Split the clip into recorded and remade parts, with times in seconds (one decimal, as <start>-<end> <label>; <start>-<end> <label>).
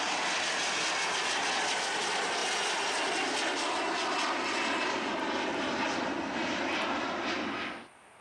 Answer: 0.0-8.2 recorded